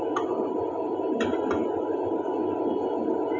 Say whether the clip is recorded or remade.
recorded